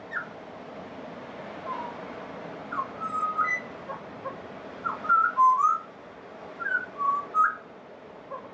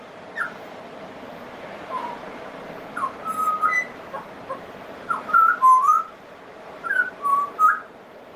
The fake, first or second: second